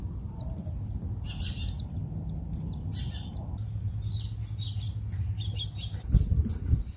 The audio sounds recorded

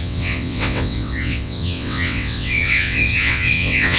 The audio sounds remade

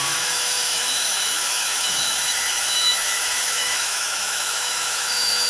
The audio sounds remade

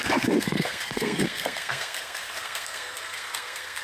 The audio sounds remade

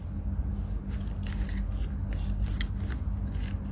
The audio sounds recorded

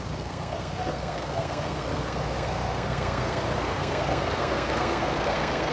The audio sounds remade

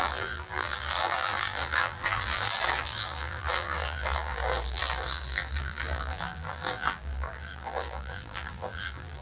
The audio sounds remade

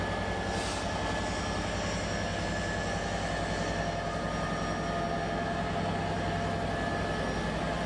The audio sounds recorded